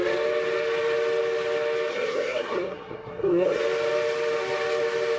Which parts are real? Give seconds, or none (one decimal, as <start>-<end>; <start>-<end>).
0.0-1.9; 3.6-5.2

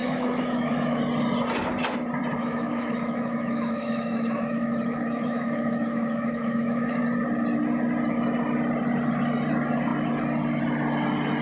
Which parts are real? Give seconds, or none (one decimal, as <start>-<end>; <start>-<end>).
1.0-2.4; 7.0-11.4

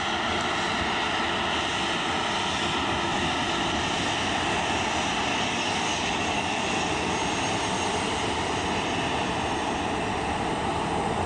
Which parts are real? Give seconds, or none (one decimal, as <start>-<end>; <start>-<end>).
0.0-5.3; 7.1-11.3

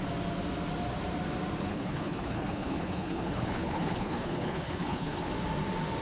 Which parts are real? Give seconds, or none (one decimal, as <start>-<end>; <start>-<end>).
0.0-1.7; 5.3-6.0

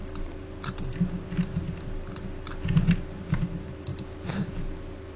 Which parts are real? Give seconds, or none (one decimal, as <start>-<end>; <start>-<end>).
0.0-5.2

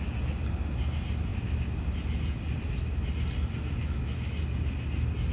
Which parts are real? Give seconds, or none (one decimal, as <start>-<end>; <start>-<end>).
0.0-3.8; 4.3-5.3